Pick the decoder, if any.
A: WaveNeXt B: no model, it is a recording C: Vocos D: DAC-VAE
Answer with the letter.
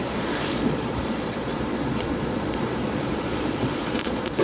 C